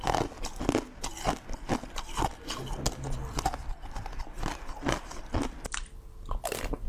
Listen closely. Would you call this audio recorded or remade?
recorded